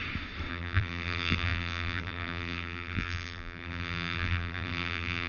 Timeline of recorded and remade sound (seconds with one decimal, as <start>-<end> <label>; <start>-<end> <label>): 0.0-0.5 recorded; 0.5-5.3 remade